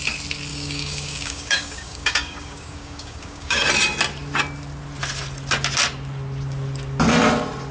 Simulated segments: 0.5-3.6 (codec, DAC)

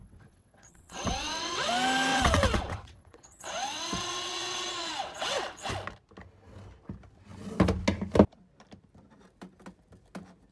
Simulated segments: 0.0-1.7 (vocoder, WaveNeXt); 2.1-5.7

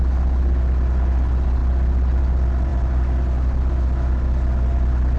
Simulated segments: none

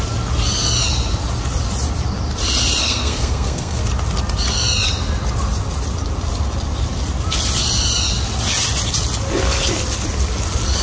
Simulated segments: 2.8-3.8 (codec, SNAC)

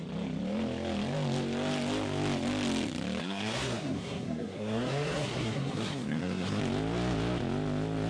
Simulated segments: 3.2-6.6 (codec, SNAC)